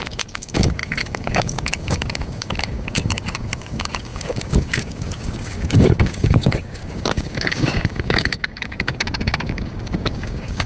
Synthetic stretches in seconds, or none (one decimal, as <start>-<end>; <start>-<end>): 0.0-10.7